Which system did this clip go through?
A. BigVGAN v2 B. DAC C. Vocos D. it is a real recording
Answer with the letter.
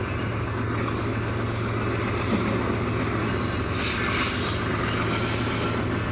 D